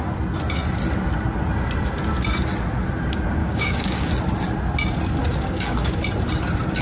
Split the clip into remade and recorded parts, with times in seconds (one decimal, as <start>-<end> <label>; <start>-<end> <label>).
0.0-3.4 recorded; 3.4-4.1 remade; 4.1-5.2 recorded; 5.2-6.0 remade; 6.0-6.8 recorded